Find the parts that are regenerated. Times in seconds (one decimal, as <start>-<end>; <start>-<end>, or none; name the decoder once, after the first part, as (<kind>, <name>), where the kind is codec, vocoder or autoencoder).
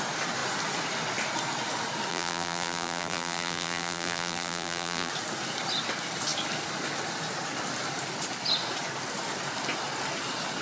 2.1-5.1 (vocoder, BigVGAN v2)